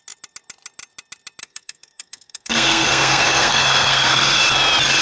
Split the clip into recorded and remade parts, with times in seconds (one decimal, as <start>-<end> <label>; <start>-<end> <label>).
0.0-1.4 recorded; 1.4-4.4 remade; 4.4-5.0 recorded